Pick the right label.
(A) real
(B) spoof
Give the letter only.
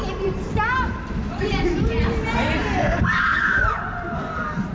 B